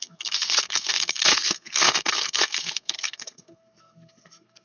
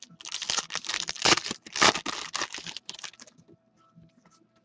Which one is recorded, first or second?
second